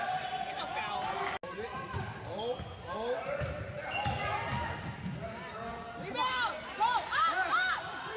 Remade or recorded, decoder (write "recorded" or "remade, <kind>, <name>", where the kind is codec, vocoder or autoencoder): recorded